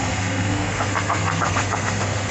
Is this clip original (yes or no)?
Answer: no